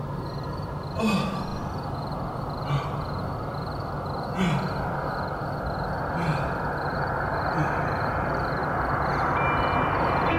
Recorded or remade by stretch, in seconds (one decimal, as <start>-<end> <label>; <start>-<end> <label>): 0.0-10.4 recorded